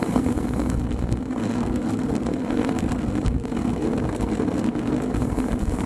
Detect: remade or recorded remade